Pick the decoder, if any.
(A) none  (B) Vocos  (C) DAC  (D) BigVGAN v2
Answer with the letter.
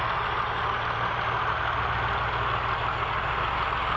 A